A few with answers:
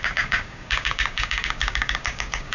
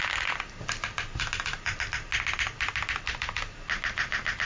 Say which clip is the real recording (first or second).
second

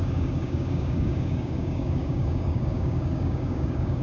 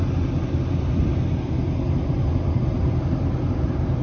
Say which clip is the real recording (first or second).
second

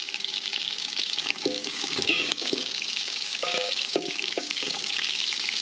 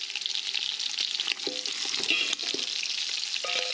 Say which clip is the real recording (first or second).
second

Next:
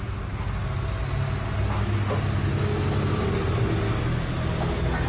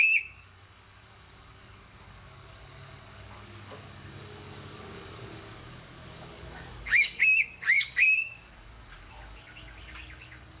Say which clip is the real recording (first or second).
first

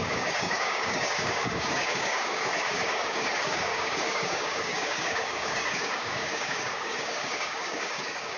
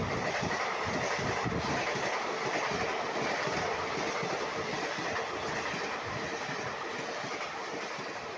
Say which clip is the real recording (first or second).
second